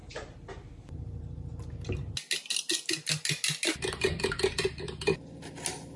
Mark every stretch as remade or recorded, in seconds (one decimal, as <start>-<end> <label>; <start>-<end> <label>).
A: 0.0-1.2 remade; 1.2-6.0 recorded